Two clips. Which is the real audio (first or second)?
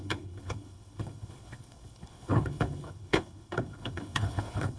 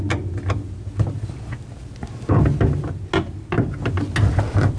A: second